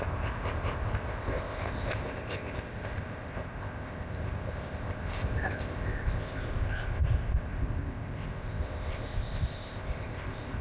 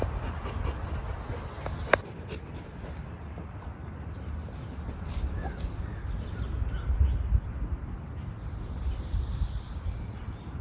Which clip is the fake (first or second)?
first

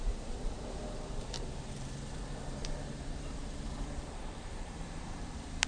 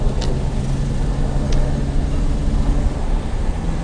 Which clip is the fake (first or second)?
first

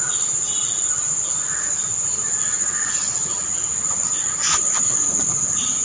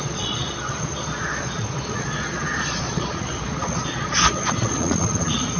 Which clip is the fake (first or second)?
second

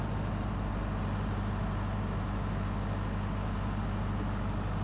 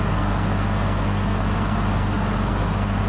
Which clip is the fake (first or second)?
second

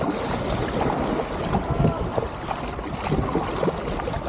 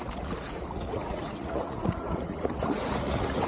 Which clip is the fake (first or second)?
second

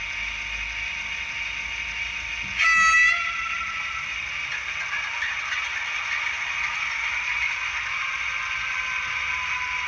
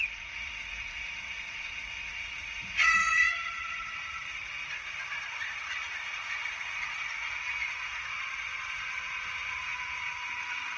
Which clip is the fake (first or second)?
second